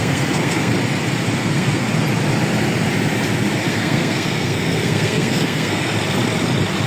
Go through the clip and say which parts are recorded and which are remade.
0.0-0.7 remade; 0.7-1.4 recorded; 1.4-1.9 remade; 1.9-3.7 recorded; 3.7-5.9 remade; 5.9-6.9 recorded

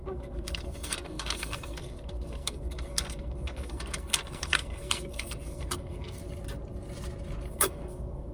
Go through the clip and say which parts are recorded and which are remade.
0.0-6.2 remade; 6.2-7.5 recorded; 7.5-8.3 remade

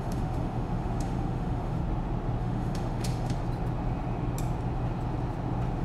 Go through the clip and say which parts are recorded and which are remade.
0.0-1.8 remade; 1.8-2.4 recorded; 2.4-3.4 remade; 3.4-5.8 recorded

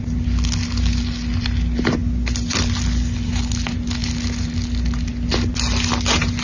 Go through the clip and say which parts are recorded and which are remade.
0.0-6.4 recorded

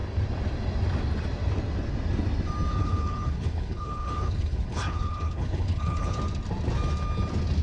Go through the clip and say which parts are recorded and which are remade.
0.0-2.7 recorded; 2.7-6.2 remade; 6.2-7.6 recorded

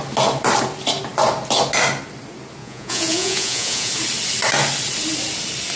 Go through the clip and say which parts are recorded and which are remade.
0.0-2.6 recorded; 2.6-3.9 remade; 3.9-5.8 recorded

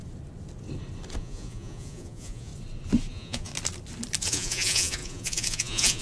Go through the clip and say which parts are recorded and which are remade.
0.0-1.2 recorded; 1.2-2.5 remade; 2.5-3.1 recorded; 3.1-3.5 remade; 3.5-4.2 recorded; 4.2-6.0 remade